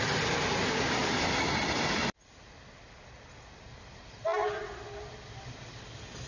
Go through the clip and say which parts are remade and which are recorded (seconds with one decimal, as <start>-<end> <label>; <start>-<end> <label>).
0.0-6.3 recorded